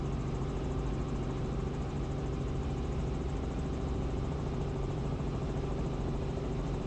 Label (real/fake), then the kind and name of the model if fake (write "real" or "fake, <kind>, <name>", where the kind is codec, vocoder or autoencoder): fake, vocoder, BigVGAN v2